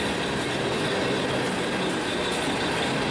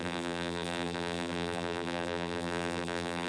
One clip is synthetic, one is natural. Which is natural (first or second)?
first